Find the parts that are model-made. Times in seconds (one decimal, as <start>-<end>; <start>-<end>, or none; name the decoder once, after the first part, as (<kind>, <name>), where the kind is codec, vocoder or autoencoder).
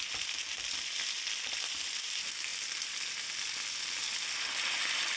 none